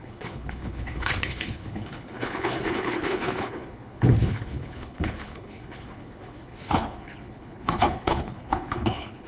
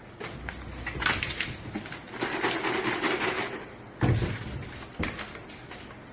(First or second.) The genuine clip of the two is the second